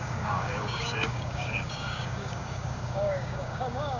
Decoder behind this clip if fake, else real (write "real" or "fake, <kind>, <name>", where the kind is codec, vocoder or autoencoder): fake, codec, DAC